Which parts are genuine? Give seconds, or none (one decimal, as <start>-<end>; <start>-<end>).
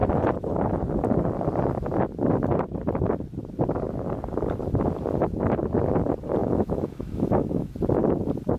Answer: 0.0-6.4; 7.7-8.6